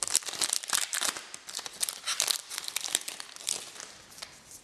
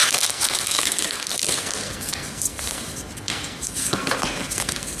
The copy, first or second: second